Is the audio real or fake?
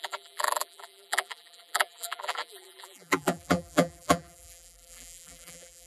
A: fake